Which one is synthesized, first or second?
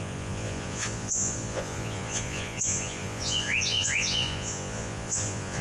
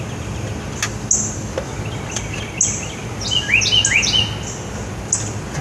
first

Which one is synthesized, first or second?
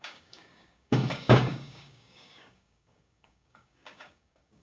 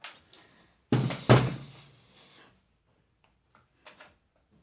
first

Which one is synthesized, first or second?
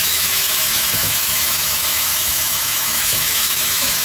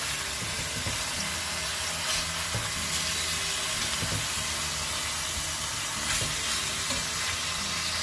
first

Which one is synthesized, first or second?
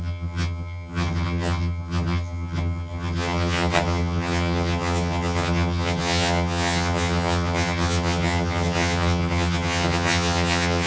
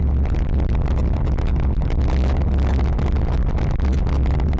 first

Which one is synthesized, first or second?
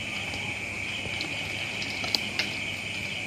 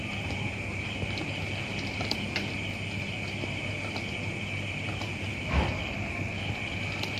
second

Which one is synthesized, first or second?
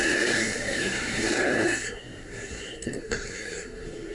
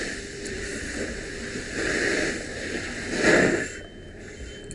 first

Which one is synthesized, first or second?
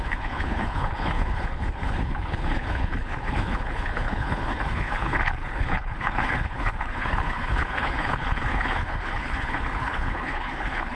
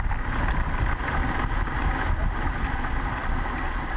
first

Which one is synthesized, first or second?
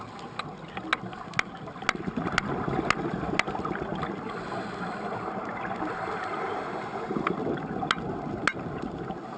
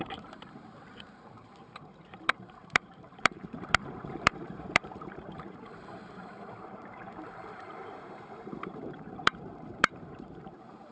second